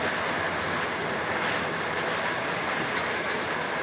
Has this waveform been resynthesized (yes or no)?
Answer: no